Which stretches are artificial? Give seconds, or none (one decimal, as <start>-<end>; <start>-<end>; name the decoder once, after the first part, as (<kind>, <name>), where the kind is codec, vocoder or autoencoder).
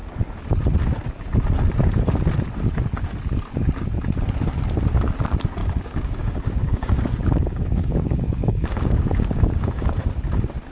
5.6-10.0 (codec, DAC)